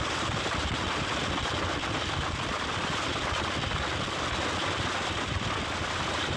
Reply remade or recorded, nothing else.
recorded